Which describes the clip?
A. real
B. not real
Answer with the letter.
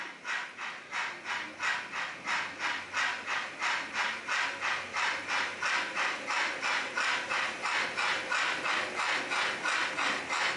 A